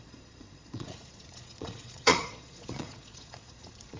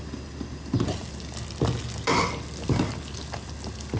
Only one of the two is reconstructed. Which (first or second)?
first